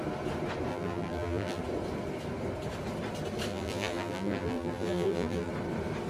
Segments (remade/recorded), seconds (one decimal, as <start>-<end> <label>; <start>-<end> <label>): 0.0-0.7 recorded; 0.7-1.6 remade; 1.6-3.5 recorded; 3.5-5.5 remade; 5.5-6.1 recorded